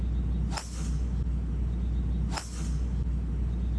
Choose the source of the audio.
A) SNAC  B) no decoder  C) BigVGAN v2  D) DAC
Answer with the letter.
B